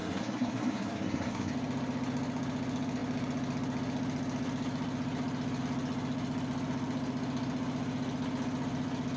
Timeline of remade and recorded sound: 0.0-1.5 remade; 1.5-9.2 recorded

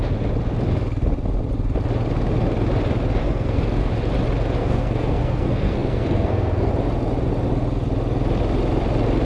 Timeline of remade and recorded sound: 0.0-3.2 recorded; 3.2-3.9 remade; 3.9-4.6 recorded; 4.6-6.7 remade; 6.7-9.2 recorded

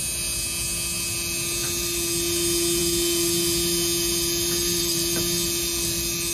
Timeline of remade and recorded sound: 0.0-6.3 recorded

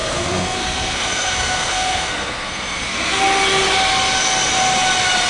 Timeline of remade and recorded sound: 0.0-3.2 remade; 3.2-5.3 recorded